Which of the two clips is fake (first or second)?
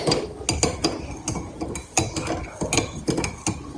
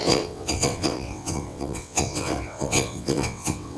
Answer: second